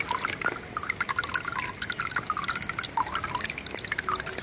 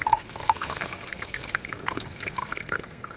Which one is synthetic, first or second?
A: second